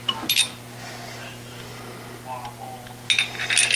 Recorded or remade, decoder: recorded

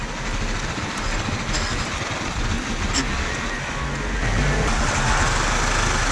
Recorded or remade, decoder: recorded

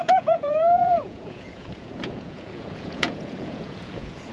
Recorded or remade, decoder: remade, vocoder, Vocos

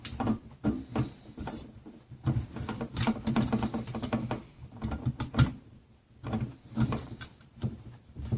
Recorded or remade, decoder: remade, vocoder, BigVGAN v2